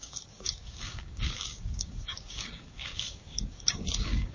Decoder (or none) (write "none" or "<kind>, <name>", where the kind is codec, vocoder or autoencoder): codec, DAC